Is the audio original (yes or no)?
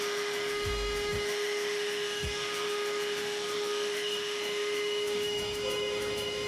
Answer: no